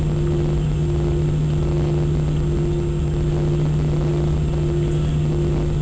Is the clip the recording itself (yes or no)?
yes